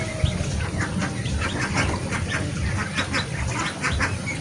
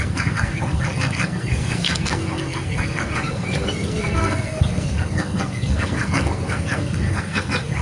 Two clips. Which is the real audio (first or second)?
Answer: first